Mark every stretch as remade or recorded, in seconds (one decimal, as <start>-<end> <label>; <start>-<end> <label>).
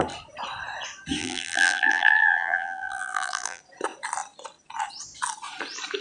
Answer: 0.0-1.2 recorded; 1.2-3.6 remade; 3.6-6.0 recorded